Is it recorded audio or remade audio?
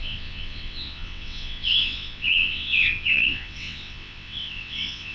remade